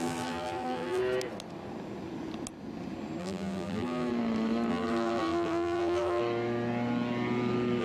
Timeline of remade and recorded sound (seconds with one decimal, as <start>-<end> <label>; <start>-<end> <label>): 0.0-1.0 remade; 1.0-3.2 recorded; 3.2-4.1 remade; 4.1-4.7 recorded; 4.7-6.2 remade; 6.2-7.8 recorded